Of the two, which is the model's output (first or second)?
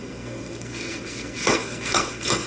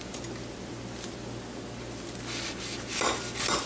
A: first